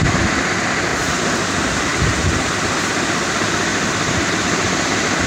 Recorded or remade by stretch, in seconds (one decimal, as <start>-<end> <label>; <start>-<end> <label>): 0.0-5.3 recorded